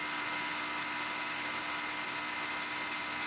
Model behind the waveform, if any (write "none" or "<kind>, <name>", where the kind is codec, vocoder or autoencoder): none